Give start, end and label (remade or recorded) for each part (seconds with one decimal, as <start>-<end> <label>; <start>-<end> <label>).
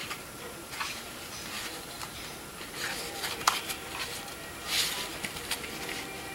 0.0-3.7 remade; 3.7-5.1 recorded; 5.1-5.7 remade; 5.7-6.3 recorded